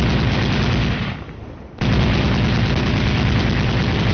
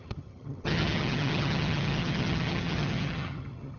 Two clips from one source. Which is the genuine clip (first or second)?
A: first